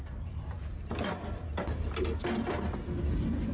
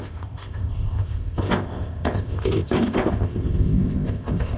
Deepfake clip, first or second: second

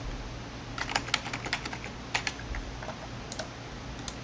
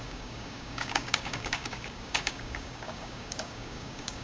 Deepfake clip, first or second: second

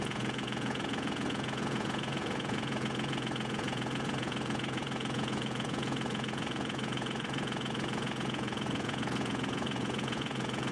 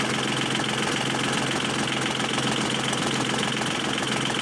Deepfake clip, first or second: first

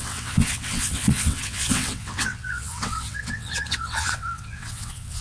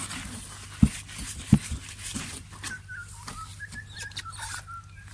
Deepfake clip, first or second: first